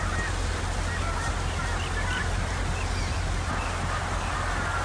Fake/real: real